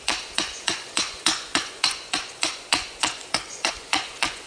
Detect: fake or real fake